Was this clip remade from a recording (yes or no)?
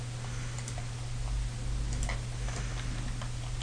no